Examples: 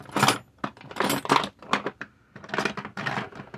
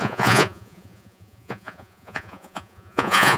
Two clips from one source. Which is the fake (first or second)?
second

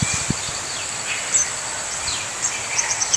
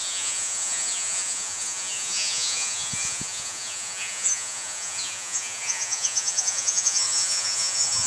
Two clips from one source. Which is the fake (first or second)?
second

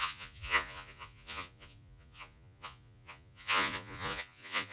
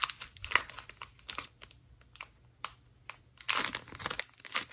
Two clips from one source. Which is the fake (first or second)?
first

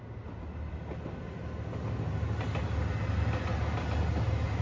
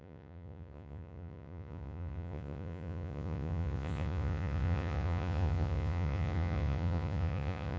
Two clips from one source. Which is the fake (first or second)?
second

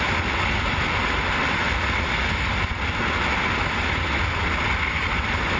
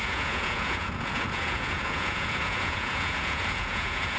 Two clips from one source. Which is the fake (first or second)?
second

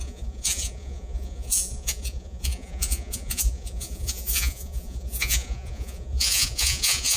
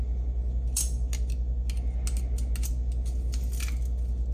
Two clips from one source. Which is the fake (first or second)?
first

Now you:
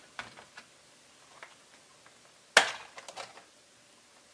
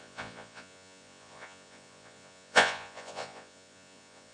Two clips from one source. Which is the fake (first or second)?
second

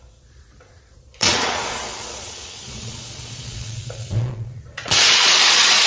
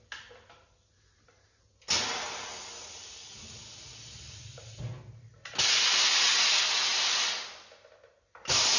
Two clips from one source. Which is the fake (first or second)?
first